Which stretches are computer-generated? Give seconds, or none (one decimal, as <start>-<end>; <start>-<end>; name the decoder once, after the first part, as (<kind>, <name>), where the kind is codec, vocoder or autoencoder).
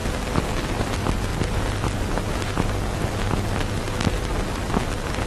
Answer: none